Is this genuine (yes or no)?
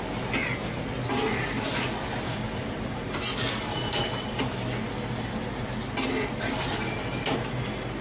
yes